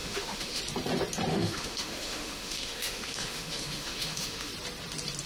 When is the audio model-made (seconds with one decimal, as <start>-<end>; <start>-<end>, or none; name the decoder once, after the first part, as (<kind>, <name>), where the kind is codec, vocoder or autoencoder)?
0.0-0.6 (autoencoder, DAC-VAE); 1.3-4.5